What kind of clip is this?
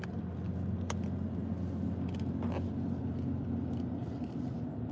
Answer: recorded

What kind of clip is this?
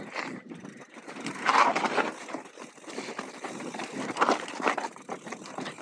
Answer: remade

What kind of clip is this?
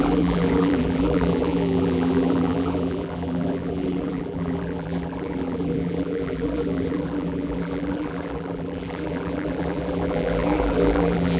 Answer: remade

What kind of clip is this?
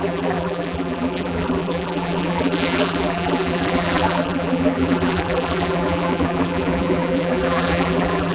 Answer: remade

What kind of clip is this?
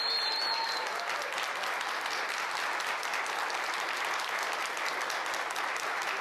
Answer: recorded